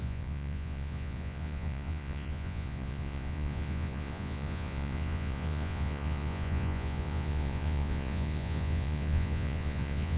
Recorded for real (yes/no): no